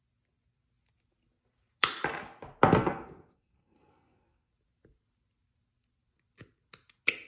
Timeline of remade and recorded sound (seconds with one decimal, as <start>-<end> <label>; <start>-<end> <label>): 0.0-2.8 recorded; 2.8-4.5 remade; 4.5-7.3 recorded